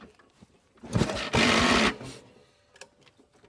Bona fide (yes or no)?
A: yes